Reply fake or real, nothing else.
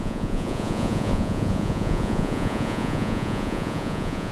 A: fake